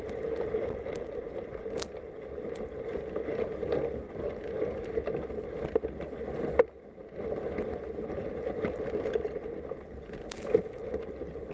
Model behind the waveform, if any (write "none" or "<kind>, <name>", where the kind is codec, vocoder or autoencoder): none